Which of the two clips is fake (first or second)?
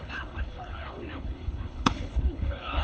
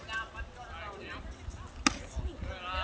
first